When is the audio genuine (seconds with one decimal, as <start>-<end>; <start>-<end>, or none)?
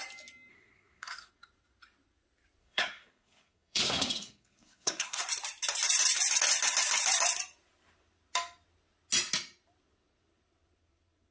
0.0-0.5; 1.3-2.6; 5.2-11.3